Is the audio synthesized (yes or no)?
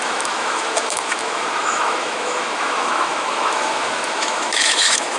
yes